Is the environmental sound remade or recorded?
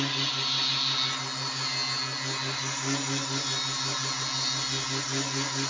recorded